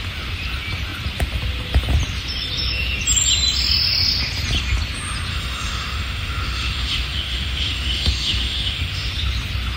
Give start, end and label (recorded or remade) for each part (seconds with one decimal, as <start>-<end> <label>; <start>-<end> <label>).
0.0-5.3 recorded; 5.3-9.1 remade; 9.1-9.8 recorded